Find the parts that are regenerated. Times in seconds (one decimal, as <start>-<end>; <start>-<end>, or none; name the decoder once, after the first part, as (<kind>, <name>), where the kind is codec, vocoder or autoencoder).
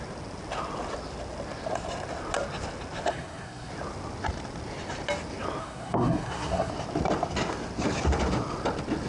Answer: 3.1-3.7 (codec, SNAC); 5.6-6.7